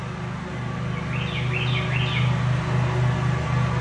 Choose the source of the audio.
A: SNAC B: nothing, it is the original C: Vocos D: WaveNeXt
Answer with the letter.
B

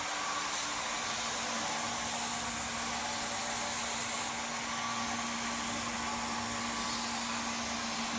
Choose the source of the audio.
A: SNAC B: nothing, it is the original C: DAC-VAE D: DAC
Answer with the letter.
B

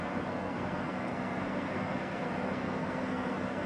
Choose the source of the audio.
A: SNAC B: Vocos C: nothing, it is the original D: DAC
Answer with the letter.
A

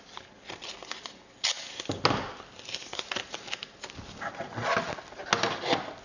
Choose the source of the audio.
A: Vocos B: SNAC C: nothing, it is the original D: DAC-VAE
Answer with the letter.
C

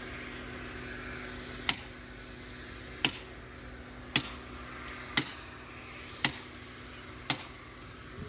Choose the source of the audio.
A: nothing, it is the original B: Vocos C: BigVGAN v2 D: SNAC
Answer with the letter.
A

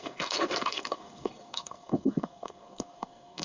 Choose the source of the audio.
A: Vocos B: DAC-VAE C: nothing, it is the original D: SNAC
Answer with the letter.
D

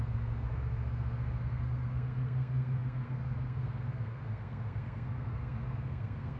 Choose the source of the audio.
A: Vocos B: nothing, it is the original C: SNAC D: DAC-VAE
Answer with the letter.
C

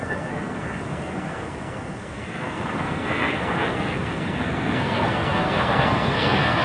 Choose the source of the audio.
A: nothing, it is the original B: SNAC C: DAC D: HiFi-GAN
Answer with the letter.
B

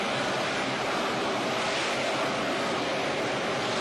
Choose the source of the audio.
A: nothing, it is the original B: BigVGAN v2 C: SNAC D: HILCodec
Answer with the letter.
A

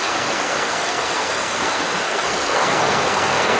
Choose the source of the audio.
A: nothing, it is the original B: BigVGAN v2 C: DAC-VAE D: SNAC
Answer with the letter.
D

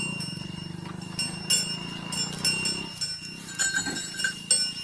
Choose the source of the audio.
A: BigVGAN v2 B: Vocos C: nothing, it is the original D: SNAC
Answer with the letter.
C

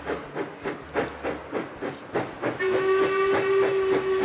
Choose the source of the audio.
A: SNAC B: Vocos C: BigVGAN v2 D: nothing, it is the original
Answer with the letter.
D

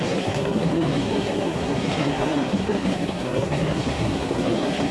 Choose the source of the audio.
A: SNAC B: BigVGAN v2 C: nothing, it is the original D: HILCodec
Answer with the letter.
A